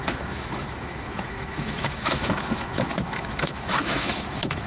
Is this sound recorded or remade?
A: remade